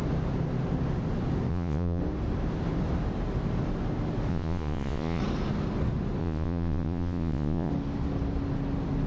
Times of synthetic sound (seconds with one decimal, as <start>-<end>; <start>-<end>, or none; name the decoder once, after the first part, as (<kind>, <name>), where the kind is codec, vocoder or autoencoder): 1.5-2.0 (vocoder, Vocos); 4.3-5.2; 6.2-7.7